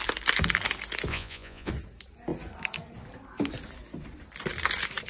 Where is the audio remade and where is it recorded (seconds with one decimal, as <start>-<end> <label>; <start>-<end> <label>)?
0.0-1.1 recorded; 1.1-1.7 remade; 1.7-5.1 recorded